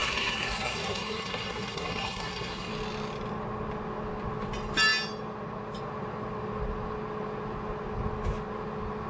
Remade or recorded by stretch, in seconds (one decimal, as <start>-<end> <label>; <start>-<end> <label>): 0.0-2.7 remade; 2.7-9.1 recorded